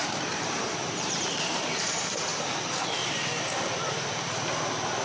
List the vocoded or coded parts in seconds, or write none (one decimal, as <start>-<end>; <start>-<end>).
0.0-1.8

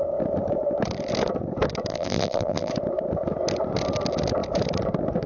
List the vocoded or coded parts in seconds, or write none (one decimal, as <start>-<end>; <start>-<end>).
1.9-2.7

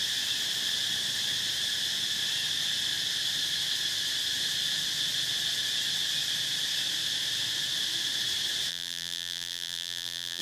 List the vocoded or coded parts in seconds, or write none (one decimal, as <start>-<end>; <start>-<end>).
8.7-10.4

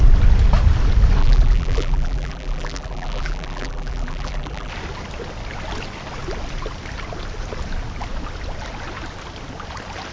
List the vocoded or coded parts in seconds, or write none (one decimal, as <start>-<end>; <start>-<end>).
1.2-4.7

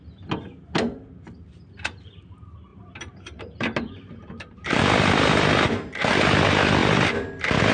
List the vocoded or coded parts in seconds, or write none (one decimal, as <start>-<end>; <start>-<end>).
2.7-4.7

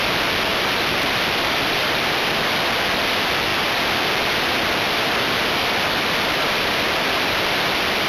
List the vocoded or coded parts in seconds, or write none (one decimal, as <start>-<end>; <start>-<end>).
0.5-2.5; 3.5-8.1